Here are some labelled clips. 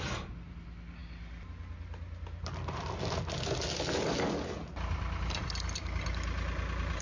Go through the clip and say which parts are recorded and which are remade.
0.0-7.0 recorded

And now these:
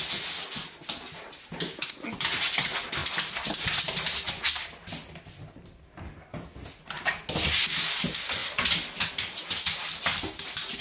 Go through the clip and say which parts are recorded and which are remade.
0.0-10.8 recorded